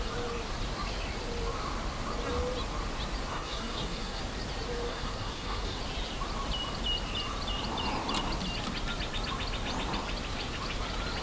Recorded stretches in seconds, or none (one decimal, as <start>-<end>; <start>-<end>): 0.0-3.3; 4.2-4.9; 5.8-11.2